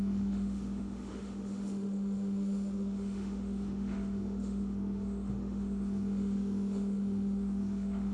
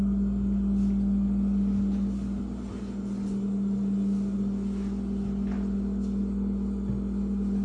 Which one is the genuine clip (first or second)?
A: second